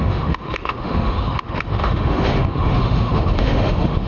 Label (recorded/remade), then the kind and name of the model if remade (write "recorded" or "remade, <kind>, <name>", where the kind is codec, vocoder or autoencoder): remade, autoencoder, DAC-VAE